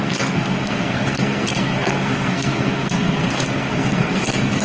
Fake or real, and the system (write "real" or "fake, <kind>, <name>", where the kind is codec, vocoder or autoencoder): fake, codec, SNAC